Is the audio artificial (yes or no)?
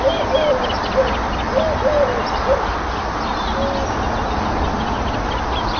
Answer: no